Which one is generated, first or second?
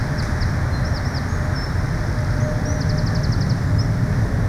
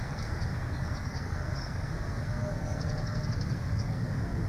second